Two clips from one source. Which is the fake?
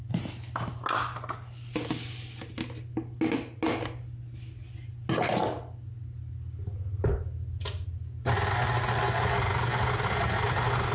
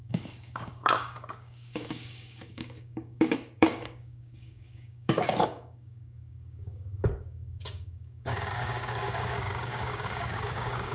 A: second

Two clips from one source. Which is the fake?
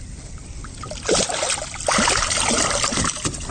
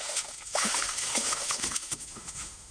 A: second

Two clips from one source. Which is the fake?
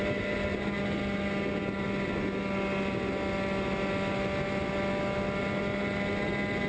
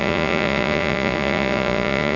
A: second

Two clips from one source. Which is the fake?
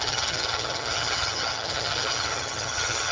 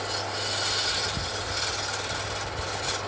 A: first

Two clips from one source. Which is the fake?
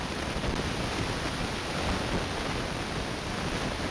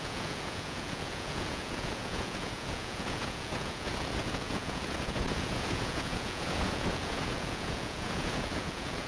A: second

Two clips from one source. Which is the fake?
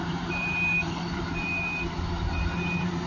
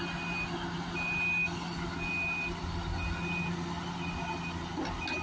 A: first